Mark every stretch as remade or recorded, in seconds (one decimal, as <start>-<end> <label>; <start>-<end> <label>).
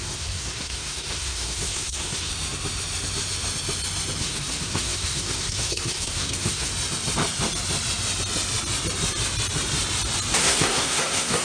0.0-2.3 remade; 2.3-4.2 recorded; 4.2-6.7 remade; 6.7-10.4 recorded; 10.4-11.4 remade